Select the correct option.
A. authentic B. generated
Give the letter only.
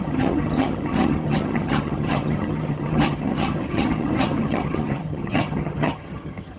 B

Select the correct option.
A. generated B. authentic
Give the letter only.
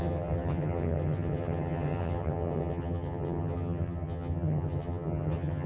A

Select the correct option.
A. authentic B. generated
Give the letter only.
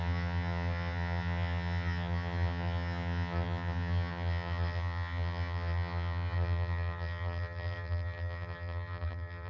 B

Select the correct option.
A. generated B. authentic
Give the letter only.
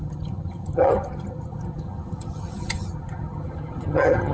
A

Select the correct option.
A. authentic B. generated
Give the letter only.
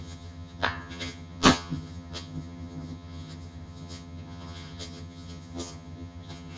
B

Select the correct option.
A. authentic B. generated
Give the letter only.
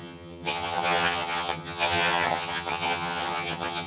B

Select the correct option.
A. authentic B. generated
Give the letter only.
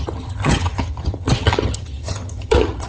B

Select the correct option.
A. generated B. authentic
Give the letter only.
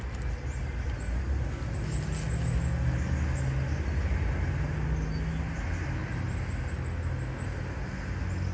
B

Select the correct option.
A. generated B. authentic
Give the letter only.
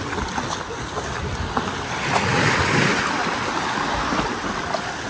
B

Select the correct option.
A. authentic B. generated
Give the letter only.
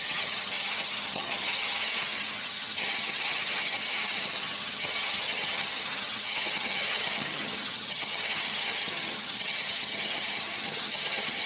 B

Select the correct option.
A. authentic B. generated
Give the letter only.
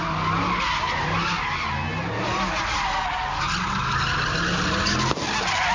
A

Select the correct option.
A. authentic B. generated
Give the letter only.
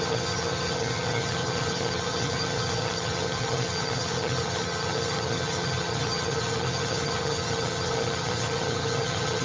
B